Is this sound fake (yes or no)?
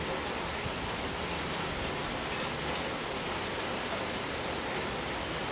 no